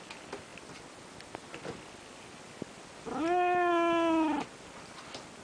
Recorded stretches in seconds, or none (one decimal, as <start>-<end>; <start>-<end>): 0.0-5.4